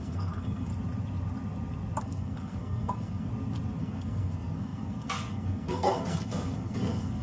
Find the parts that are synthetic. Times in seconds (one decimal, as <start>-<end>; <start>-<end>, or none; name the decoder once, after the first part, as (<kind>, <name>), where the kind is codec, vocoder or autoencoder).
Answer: 0.0-0.7 (codec, SNAC); 2.0-3.3; 3.8-7.2